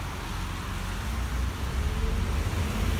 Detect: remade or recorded recorded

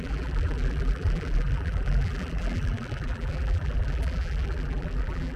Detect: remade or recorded remade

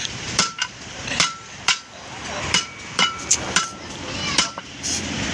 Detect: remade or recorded remade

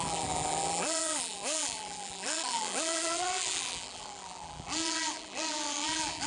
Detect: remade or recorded remade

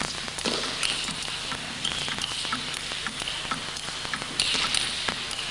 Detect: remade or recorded recorded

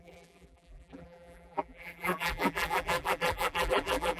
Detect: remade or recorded remade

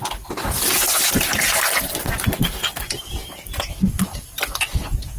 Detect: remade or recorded recorded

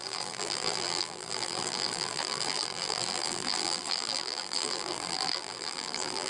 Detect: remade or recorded remade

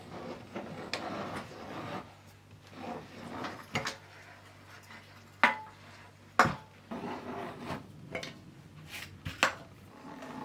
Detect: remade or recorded recorded